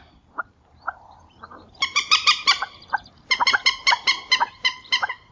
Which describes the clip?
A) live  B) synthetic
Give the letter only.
B